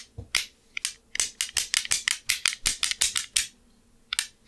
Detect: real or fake real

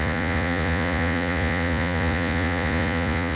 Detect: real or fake fake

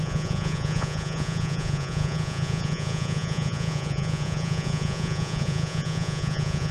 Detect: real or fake fake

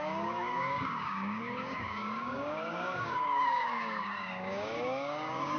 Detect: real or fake fake